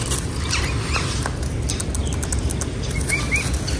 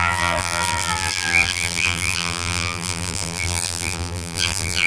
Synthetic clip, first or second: second